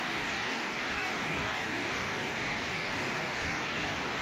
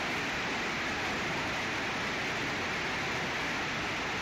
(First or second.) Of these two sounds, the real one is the second